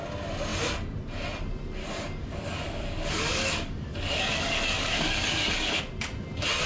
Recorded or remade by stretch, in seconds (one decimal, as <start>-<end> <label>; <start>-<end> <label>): 0.0-1.8 recorded; 1.8-5.8 remade; 5.8-6.7 recorded